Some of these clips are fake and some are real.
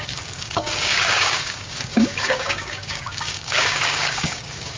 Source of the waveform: fake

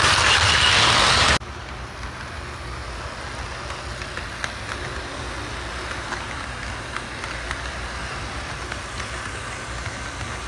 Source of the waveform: real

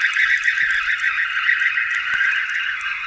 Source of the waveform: real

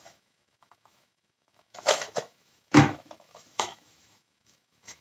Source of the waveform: fake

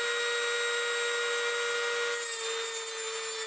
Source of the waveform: real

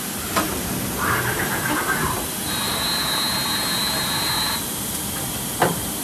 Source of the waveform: real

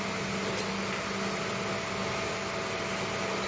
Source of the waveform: real